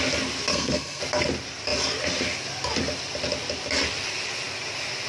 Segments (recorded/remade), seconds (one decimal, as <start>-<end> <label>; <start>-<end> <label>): 0.0-0.5 recorded; 0.5-1.0 remade; 1.0-5.1 recorded